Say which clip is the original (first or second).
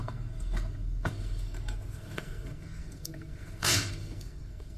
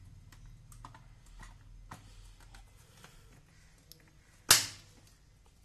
second